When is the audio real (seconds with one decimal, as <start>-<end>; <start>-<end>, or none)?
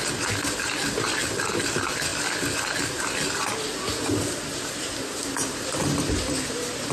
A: 0.0-6.9